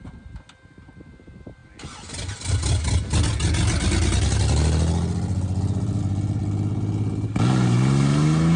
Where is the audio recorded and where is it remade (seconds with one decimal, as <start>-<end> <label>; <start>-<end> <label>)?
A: 0.0-8.6 recorded